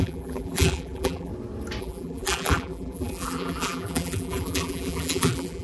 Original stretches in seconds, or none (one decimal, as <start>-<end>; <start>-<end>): 1.3-1.8